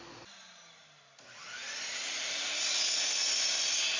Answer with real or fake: real